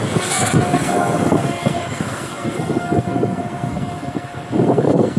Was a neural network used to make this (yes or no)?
yes